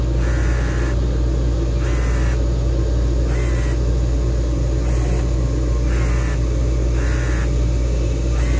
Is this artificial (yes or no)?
no